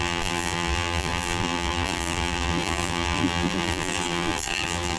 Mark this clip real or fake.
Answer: fake